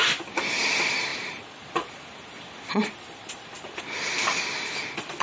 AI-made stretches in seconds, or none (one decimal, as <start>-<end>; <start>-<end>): 1.1-3.8